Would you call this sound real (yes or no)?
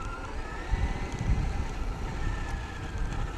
yes